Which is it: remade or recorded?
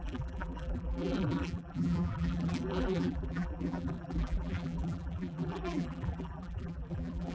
remade